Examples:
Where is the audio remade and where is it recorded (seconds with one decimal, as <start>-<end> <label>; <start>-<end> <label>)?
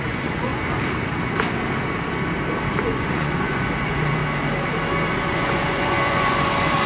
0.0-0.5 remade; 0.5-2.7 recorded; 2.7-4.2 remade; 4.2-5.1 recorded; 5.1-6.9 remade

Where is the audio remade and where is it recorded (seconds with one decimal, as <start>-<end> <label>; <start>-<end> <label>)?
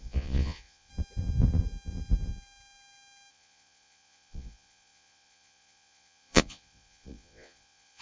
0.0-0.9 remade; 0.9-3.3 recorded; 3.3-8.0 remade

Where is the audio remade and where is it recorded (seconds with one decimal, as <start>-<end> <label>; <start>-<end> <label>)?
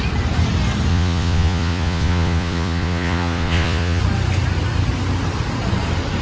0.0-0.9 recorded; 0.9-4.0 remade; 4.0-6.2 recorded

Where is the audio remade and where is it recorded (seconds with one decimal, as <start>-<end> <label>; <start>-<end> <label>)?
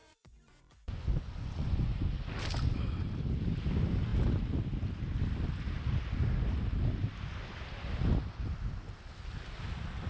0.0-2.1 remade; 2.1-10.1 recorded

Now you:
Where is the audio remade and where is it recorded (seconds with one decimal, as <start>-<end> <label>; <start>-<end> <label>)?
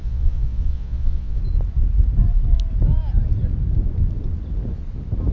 0.0-1.4 remade; 1.4-5.3 recorded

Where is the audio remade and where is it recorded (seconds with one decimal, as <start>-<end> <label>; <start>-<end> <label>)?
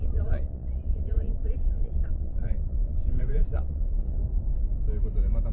0.0-4.2 remade; 4.2-5.5 recorded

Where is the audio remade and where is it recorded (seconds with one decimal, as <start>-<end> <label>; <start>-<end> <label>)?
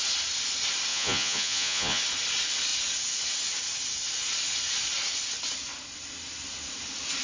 0.0-0.9 recorded; 0.9-2.0 remade; 2.0-7.2 recorded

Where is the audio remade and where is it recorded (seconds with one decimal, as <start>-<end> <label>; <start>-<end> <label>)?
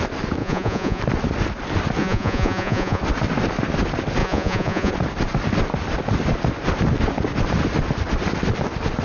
0.0-0.4 recorded; 0.4-1.0 remade; 1.0-2.0 recorded; 2.0-3.0 remade; 3.0-4.2 recorded; 4.2-4.9 remade; 4.9-9.0 recorded